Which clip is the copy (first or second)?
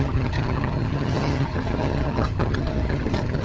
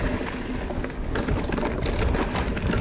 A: first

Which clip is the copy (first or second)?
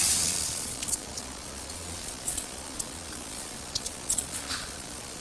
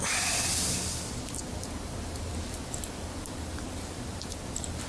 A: first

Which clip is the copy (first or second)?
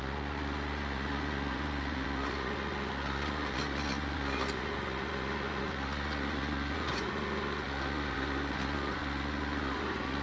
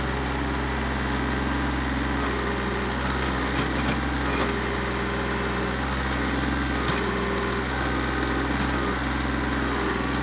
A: first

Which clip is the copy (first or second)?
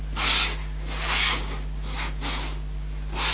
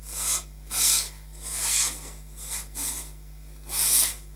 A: second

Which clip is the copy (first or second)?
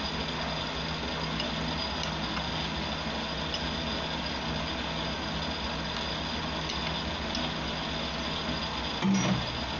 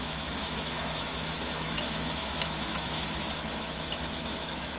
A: second